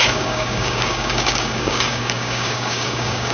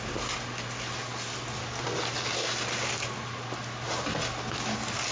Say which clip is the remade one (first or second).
first